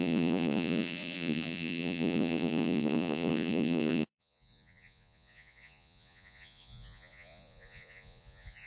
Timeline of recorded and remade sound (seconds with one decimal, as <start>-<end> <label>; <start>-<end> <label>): 0.0-8.7 remade